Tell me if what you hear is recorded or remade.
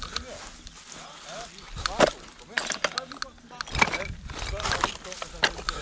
recorded